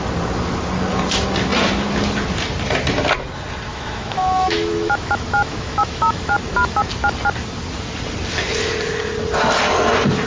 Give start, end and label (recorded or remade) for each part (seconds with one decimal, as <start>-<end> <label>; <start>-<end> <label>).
0.0-3.7 recorded; 3.7-6.3 remade; 6.3-10.3 recorded